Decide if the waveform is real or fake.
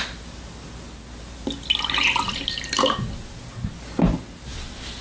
real